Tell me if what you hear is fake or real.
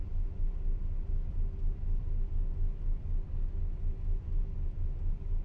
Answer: real